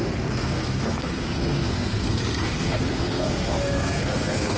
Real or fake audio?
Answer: fake